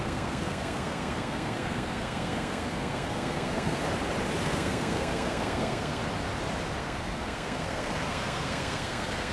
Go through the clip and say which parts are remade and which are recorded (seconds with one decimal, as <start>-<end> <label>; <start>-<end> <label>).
0.0-3.8 remade; 3.8-4.4 recorded; 4.4-6.0 remade; 6.0-6.8 recorded; 6.8-9.3 remade